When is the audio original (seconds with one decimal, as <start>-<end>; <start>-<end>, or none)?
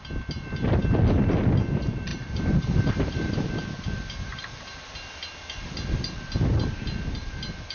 0.0-2.1; 3.3-4.3; 4.9-7.7